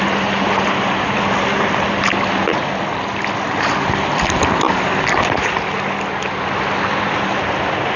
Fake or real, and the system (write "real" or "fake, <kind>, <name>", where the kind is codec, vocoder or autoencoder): real